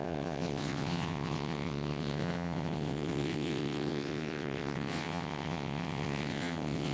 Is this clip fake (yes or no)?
yes